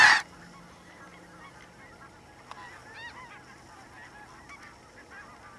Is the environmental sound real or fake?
real